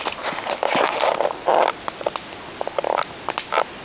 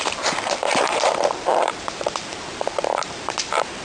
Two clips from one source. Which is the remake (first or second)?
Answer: second